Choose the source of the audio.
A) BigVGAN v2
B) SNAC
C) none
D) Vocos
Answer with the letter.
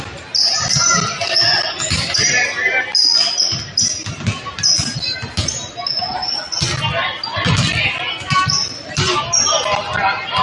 C